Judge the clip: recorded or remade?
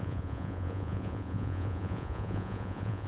remade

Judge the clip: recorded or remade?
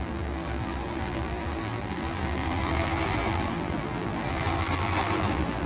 remade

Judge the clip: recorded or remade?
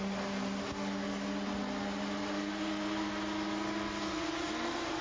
recorded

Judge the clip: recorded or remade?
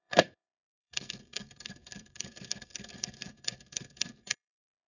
remade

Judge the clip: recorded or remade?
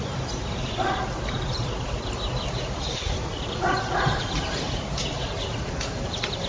recorded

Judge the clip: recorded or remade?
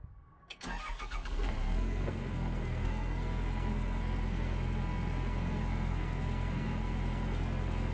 remade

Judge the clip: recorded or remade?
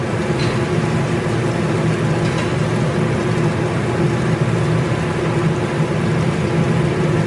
recorded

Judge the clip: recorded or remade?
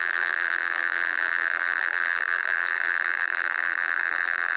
remade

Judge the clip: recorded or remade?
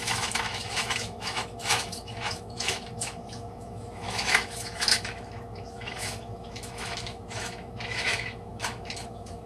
remade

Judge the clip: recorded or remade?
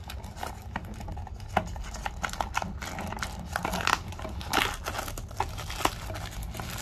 recorded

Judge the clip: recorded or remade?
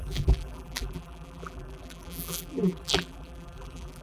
remade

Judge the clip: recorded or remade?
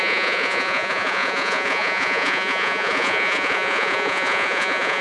remade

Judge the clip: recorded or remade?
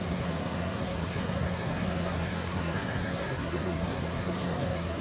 remade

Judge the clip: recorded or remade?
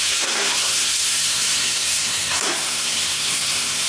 remade